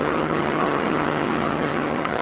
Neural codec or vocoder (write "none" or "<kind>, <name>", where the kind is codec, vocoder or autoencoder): vocoder, HiFi-GAN